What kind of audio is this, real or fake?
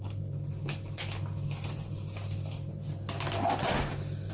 real